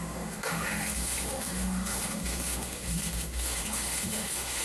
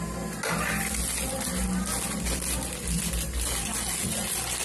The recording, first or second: second